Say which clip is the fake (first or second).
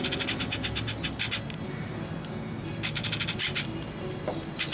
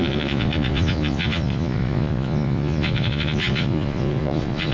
second